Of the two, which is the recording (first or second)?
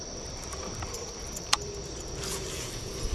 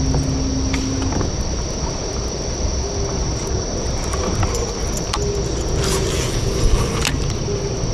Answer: second